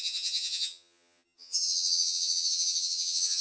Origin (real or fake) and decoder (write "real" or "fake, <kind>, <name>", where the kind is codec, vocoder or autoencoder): fake, vocoder, HiFi-GAN